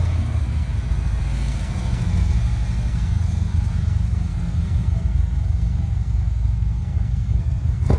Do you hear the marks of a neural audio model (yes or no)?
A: yes